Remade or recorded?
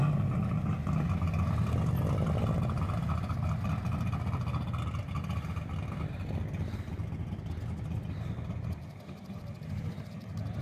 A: recorded